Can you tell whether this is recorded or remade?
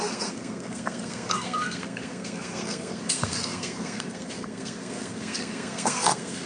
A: remade